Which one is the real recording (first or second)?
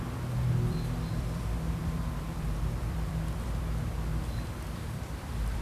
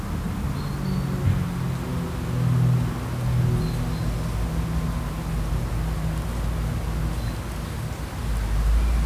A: second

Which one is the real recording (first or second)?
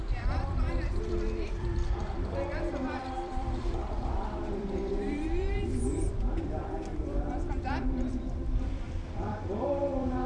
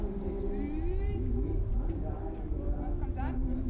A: second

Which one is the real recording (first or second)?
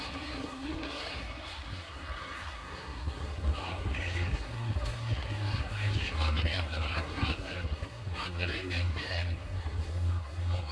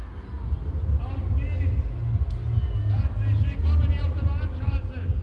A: second